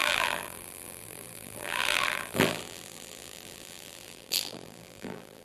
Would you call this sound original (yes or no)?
no